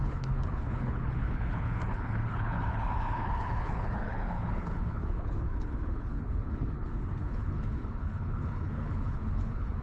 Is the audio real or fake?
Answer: fake